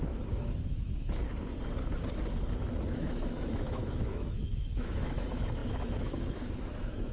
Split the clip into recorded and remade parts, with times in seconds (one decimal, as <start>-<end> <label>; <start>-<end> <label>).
0.0-1.2 remade; 1.2-2.9 recorded; 2.9-7.1 remade

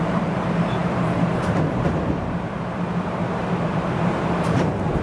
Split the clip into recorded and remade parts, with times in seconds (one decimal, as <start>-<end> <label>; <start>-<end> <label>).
0.0-5.0 remade

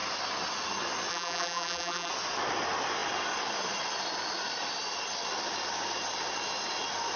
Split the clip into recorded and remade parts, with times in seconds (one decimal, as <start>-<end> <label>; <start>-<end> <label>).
0.0-1.1 recorded; 1.1-2.1 remade; 2.1-7.2 recorded

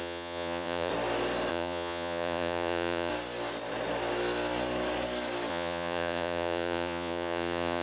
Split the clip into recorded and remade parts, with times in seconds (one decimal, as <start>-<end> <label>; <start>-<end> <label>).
0.0-0.9 remade; 0.9-1.5 recorded; 1.5-3.1 remade; 3.1-5.5 recorded; 5.5-7.8 remade

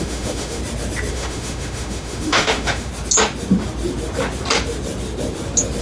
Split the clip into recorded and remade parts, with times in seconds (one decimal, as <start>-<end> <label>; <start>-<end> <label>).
0.0-0.6 remade; 0.6-1.1 recorded; 1.1-2.9 remade; 2.9-5.8 recorded

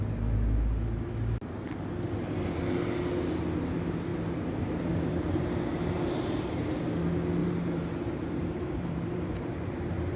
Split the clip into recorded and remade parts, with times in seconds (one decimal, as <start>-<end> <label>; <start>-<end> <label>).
0.0-4.1 recorded; 4.1-6.8 remade; 6.8-7.4 recorded; 7.4-9.7 remade; 9.7-10.2 recorded